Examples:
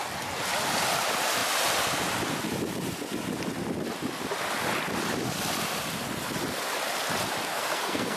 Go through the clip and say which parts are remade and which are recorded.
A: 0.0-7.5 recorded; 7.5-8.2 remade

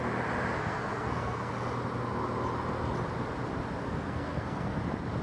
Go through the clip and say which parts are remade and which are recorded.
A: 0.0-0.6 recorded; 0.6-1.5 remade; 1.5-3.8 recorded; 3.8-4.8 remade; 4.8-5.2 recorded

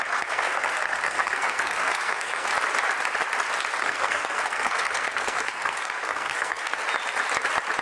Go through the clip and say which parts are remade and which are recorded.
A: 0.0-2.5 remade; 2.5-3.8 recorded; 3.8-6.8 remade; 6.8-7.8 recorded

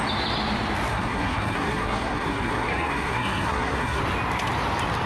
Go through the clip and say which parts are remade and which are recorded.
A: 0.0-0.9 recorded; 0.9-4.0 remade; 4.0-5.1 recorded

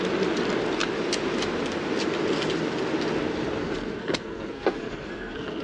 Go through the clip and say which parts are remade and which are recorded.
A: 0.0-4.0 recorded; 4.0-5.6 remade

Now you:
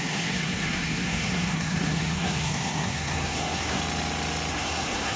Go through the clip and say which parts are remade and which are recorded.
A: 0.0-3.8 remade; 3.8-4.5 recorded; 4.5-5.2 remade

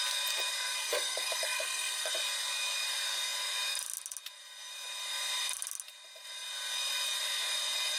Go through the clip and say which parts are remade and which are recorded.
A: 0.0-0.8 recorded; 0.8-2.1 remade; 2.1-8.0 recorded

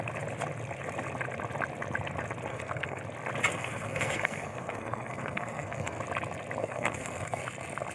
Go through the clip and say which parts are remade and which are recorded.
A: 0.0-2.5 recorded; 2.5-3.0 remade; 3.0-3.5 recorded; 3.5-6.0 remade; 6.0-6.6 recorded; 6.6-7.4 remade; 7.4-7.9 recorded